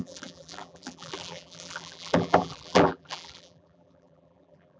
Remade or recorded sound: remade